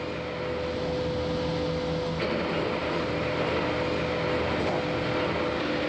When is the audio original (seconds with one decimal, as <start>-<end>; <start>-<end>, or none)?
0.0-2.8; 3.6-5.9